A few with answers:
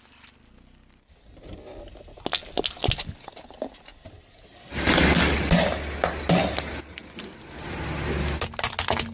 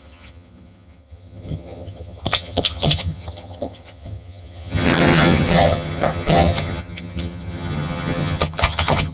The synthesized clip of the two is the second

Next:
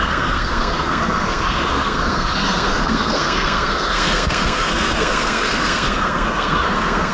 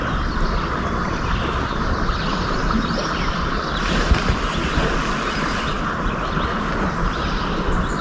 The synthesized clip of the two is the first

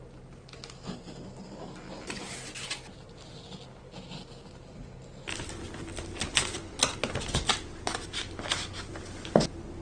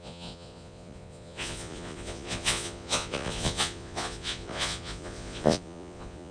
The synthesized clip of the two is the second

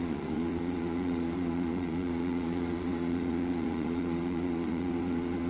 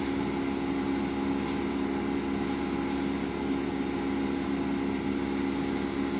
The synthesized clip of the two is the first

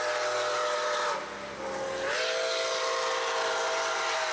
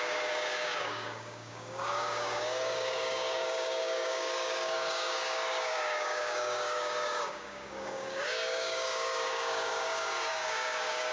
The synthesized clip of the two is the second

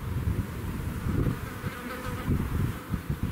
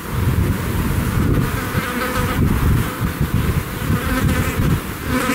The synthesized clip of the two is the first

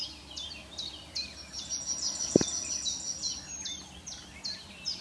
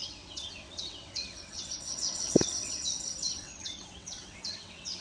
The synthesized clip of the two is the second